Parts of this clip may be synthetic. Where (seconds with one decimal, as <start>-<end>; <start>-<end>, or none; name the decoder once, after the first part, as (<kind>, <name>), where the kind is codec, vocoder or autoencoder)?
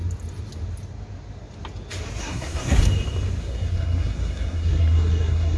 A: 2.2-2.8 (codec, SNAC); 3.4-5.6